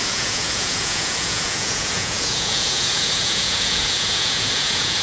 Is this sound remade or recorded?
remade